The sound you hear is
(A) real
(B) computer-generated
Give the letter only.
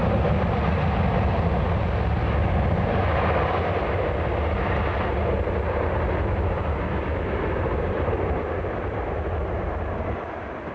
A